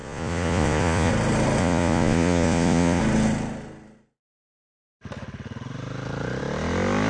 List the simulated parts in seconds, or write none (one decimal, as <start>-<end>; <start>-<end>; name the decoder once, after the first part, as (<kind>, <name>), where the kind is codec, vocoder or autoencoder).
0.0-1.1 (vocoder, Vocos); 1.6-3.0